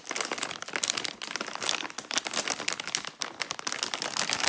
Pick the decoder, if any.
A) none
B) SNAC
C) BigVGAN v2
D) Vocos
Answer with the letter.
A